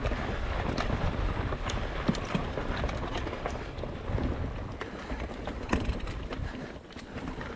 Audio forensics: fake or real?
fake